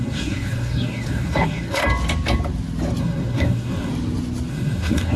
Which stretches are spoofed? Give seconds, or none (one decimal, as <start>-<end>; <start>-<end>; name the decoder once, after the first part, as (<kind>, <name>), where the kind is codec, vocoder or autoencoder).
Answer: 0.0-1.8 (codec, SNAC); 3.0-3.9; 4.5-5.2